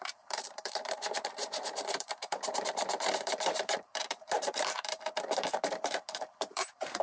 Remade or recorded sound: remade